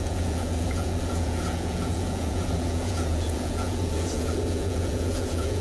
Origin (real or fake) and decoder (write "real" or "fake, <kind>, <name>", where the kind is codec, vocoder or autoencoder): fake, vocoder, Vocos